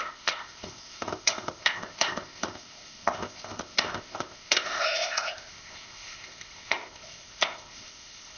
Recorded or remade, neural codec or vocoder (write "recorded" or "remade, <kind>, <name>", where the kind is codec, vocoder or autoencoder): remade, codec, ZipCodec